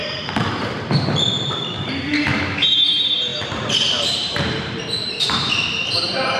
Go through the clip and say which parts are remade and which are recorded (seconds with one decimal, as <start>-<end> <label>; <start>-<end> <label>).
0.0-6.4 remade

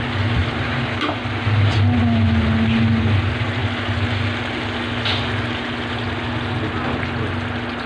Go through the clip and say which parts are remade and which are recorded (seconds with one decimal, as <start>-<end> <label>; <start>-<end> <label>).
0.0-0.4 recorded; 0.4-1.2 remade; 1.2-7.9 recorded

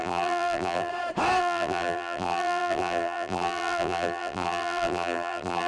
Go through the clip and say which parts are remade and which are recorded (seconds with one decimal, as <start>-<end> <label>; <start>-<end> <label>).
0.0-0.9 remade; 0.9-1.4 recorded; 1.4-5.7 remade

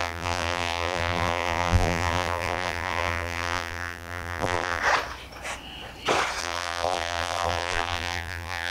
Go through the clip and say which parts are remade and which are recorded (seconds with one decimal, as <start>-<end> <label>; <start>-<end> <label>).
0.0-4.8 remade; 4.8-6.4 recorded; 6.4-8.7 remade

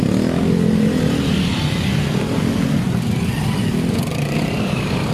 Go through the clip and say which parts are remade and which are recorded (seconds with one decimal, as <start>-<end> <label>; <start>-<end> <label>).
0.0-4.1 recorded; 4.1-5.1 remade

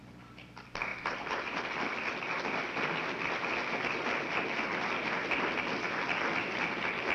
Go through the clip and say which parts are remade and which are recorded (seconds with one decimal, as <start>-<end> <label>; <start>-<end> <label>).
0.0-0.9 recorded; 0.9-1.6 remade; 1.6-7.1 recorded

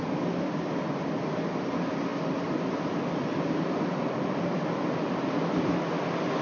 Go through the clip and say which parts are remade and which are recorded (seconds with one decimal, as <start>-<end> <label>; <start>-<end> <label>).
0.0-2.1 recorded; 2.1-4.9 remade; 4.9-6.4 recorded

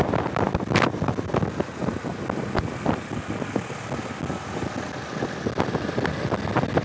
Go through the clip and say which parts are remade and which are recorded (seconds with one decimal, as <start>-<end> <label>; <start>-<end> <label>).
0.0-1.3 remade; 1.3-6.8 recorded